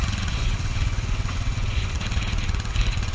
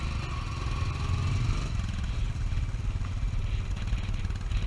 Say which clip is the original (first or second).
second